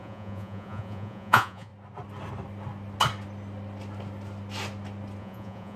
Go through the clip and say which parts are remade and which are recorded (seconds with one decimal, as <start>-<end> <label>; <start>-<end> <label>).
0.0-1.7 remade; 1.7-5.2 recorded; 5.2-5.8 remade